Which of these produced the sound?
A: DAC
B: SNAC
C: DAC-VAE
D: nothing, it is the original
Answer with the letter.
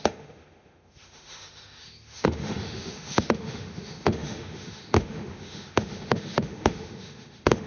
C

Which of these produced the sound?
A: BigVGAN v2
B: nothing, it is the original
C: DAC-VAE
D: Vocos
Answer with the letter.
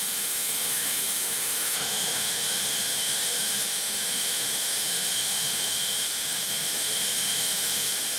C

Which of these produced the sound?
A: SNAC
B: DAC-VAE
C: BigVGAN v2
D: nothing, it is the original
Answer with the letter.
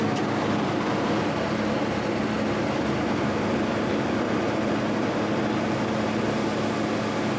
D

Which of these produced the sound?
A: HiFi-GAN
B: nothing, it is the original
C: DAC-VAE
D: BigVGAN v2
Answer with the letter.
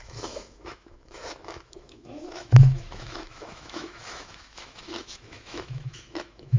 C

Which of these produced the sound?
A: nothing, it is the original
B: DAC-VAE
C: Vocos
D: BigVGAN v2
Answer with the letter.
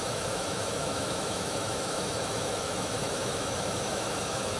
B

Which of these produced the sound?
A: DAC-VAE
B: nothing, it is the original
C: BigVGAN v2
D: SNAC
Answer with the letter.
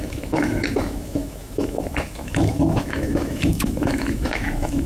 A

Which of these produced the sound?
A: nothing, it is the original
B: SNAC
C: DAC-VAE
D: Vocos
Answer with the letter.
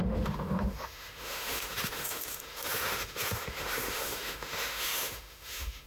C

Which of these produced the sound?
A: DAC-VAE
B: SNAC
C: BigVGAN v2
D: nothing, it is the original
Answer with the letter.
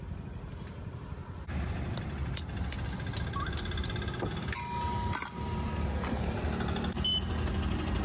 D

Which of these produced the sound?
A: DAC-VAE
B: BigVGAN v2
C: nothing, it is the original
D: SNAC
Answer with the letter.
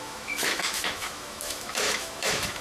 A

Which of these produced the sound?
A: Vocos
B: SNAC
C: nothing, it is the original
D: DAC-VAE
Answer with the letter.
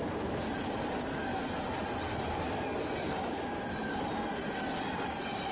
C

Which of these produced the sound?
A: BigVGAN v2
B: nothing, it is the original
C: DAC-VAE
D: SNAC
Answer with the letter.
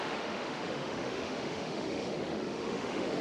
C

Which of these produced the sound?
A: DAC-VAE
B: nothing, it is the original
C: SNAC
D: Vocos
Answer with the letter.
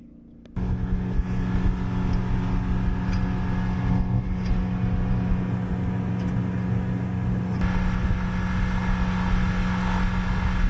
B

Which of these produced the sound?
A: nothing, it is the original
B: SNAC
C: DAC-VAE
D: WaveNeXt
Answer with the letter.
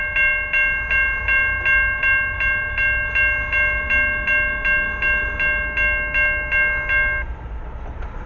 A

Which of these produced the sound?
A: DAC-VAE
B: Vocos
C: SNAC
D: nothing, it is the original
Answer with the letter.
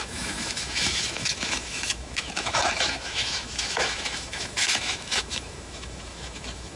A